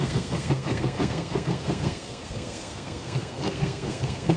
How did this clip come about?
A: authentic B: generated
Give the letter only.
B